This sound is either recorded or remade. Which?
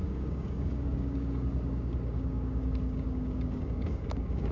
remade